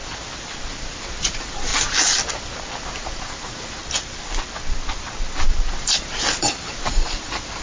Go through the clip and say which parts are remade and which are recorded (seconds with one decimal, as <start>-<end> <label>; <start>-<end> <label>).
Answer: 0.0-0.7 recorded; 0.7-1.7 remade; 1.7-2.8 recorded; 2.8-3.8 remade; 3.8-5.7 recorded; 5.7-7.6 remade